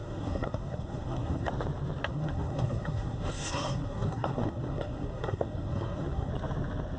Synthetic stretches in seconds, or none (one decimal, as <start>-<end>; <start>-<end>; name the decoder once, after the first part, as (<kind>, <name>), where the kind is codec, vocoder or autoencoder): 0.0-1.5 (codec, SNAC); 2.1-6.3